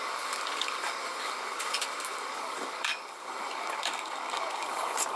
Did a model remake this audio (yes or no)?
yes